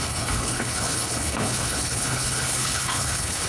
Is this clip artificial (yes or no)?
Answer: yes